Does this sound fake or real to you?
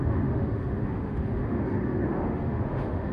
fake